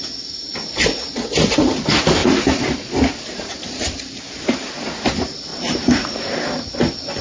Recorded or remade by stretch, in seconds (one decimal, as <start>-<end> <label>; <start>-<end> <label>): 0.0-2.2 recorded; 2.2-4.7 remade; 4.7-7.2 recorded